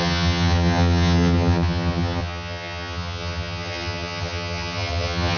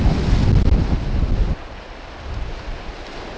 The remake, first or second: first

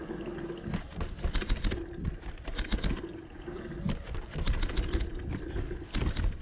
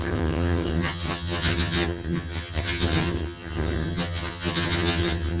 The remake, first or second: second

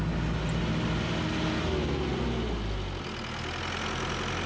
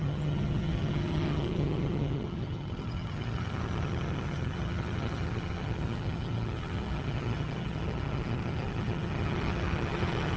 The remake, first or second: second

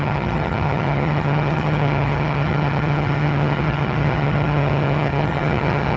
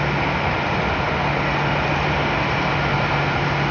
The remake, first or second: first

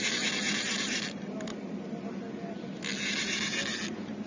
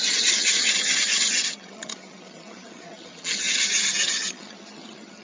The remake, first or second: second